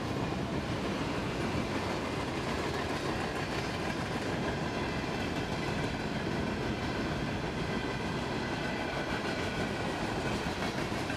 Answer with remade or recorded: recorded